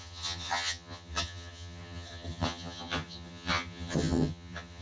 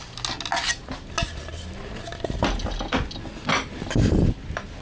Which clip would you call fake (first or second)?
first